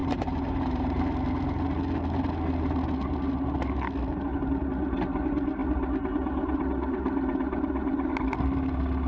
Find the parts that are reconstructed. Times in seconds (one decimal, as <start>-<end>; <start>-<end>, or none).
0.0-1.0